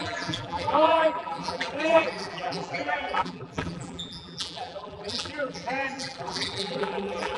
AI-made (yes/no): yes